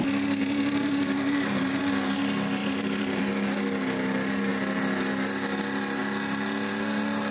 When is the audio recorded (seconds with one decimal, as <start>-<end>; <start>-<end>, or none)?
0.0-0.4; 1.8-2.6; 3.2-7.3